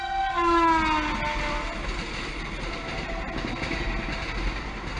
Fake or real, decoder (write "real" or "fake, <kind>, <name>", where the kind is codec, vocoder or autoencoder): real